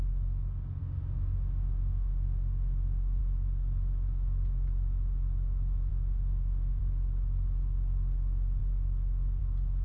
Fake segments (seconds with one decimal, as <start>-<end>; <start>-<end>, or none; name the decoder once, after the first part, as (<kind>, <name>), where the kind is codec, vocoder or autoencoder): 0.8-3.2 (autoencoder, DAC-VAE); 5.9-6.8